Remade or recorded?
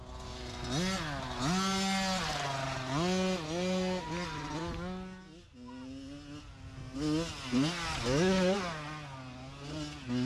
recorded